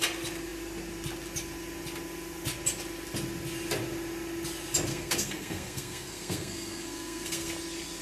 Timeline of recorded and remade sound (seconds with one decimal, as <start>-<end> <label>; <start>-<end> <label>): 0.0-4.9 recorded; 4.9-7.5 remade; 7.5-8.0 recorded